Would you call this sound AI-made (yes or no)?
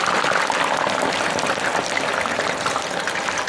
no